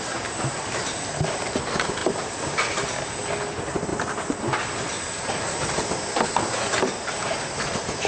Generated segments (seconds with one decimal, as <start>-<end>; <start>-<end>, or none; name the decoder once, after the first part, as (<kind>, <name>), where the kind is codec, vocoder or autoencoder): none